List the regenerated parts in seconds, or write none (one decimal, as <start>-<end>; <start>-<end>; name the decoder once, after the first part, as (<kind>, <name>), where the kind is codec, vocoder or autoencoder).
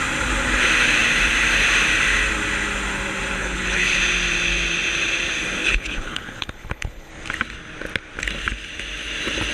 3.4-4.0 (codec, HILCodec); 5.6-7.1